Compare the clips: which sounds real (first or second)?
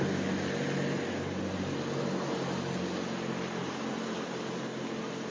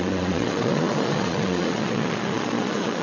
first